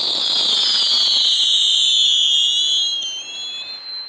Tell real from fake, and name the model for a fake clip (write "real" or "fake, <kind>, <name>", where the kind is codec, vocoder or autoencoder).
real